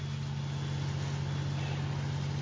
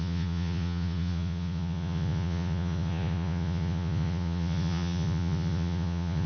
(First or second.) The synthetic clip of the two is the second